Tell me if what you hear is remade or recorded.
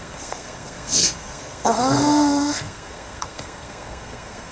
remade